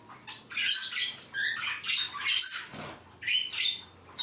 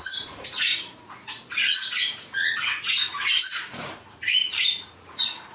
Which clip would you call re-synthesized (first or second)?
second